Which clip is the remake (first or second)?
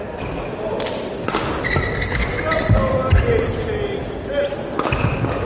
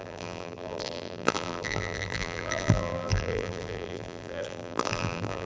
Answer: second